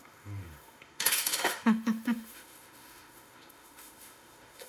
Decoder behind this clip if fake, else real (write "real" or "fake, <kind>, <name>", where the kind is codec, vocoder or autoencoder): fake, autoencoder, DAC-VAE